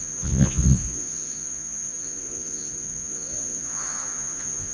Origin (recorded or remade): remade